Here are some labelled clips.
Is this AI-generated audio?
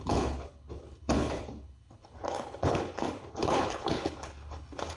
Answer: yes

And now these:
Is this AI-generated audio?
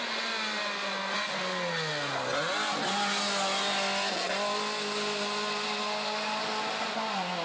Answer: no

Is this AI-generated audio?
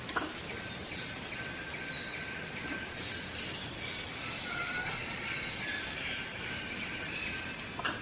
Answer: no